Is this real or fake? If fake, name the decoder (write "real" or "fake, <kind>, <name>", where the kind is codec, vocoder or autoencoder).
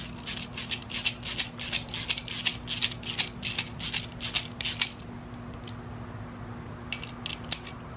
real